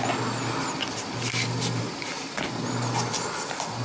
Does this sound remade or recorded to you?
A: recorded